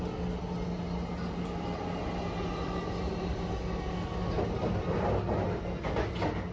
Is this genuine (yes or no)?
yes